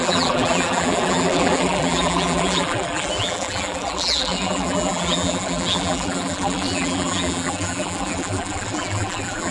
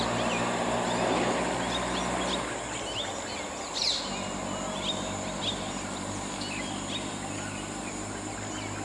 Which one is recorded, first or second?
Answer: second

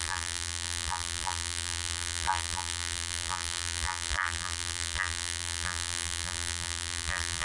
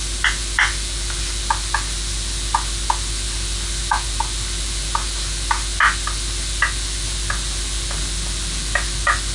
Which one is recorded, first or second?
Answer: second